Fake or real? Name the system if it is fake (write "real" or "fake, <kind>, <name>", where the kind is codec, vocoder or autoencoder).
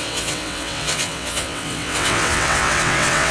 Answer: fake, vocoder, WaveNeXt